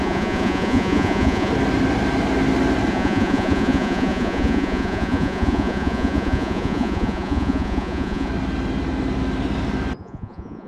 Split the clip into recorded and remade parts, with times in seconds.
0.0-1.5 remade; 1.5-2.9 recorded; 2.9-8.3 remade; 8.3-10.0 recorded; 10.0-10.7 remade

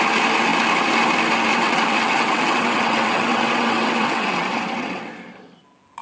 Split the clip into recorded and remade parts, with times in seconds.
0.0-1.5 recorded; 1.5-5.0 remade; 5.0-6.0 recorded